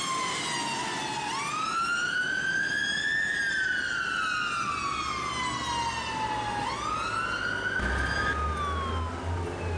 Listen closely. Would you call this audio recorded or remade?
recorded